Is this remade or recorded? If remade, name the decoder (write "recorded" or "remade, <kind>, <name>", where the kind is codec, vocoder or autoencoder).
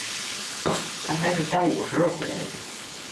remade, codec, HILCodec